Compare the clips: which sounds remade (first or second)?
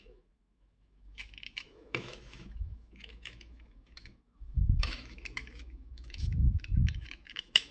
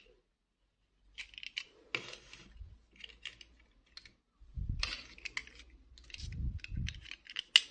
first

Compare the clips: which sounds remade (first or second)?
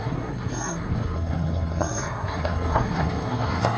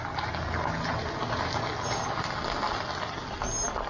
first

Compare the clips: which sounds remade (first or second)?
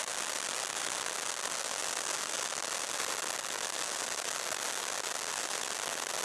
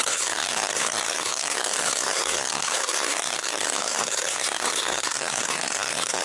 second